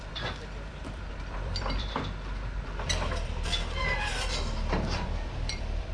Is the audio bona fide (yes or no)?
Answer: no